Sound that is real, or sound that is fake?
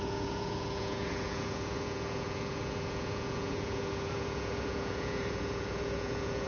fake